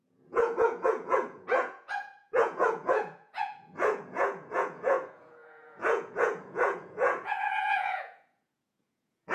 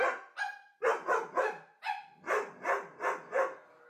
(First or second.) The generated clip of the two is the first